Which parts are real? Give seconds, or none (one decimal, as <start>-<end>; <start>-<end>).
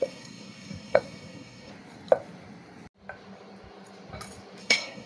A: 1.7-4.6